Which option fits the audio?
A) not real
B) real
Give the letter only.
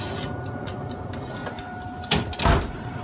B